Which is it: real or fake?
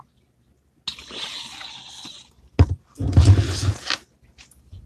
real